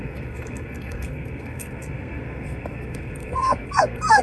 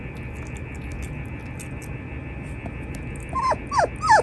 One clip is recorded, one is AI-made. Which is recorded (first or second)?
second